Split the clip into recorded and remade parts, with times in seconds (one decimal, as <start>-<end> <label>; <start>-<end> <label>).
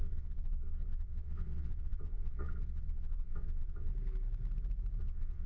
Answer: 0.0-3.9 remade; 3.9-5.0 recorded; 5.0-5.5 remade